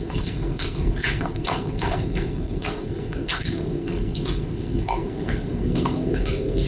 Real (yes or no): no